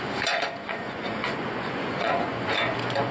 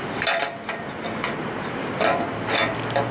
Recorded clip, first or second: second